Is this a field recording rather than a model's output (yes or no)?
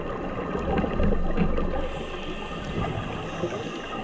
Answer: yes